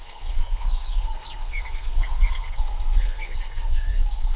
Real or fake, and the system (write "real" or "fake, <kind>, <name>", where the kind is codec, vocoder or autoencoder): fake, codec, SNAC